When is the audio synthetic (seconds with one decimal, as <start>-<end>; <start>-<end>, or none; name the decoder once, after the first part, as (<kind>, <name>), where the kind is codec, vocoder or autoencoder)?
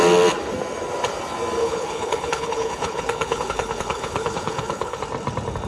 1.6-5.0 (codec, HILCodec)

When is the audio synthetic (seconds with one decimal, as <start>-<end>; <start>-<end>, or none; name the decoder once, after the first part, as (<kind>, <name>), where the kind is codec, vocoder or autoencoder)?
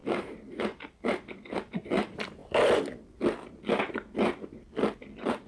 0.0-1.4 (vocoder, BigVGAN v2)